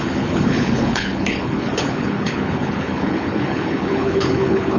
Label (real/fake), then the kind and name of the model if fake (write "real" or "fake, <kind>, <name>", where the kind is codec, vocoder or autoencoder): fake, codec, HILCodec